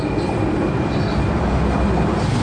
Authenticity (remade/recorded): recorded